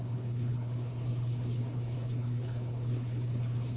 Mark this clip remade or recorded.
remade